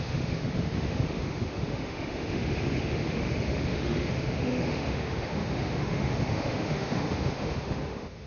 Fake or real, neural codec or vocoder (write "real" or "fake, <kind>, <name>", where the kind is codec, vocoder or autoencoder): fake, autoencoder, DAC-VAE